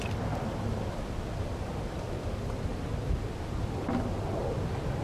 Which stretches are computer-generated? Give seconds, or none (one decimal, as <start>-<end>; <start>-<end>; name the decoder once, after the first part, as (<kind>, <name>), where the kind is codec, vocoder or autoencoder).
none